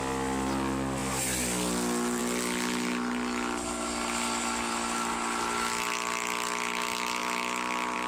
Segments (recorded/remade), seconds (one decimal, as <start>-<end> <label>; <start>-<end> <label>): 0.0-8.1 recorded